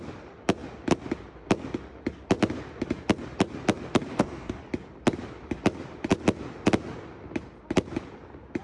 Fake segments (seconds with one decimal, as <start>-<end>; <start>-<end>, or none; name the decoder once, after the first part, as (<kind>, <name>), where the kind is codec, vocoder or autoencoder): 4.1-4.6 (codec, DAC)